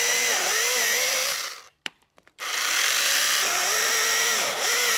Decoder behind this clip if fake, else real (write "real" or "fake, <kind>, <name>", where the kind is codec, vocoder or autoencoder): fake, vocoder, BigVGAN v2